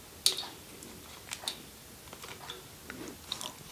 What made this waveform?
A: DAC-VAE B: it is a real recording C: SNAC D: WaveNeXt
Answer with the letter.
B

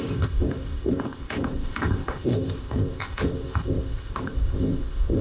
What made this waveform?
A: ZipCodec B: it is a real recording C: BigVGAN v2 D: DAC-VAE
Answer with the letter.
A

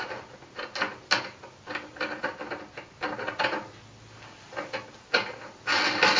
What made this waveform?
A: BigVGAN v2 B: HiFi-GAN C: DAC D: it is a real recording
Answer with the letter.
D